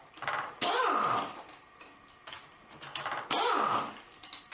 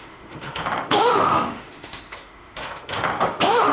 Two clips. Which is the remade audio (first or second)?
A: second